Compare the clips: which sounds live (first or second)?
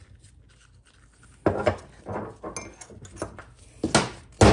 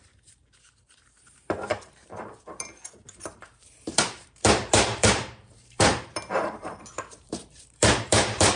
first